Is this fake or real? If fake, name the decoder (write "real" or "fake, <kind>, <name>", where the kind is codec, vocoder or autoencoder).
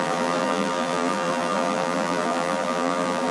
fake, vocoder, BigVGAN v2